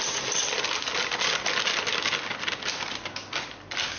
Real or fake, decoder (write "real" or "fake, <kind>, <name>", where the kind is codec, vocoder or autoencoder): real